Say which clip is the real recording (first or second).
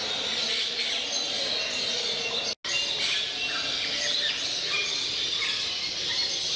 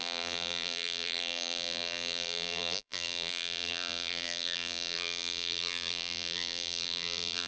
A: first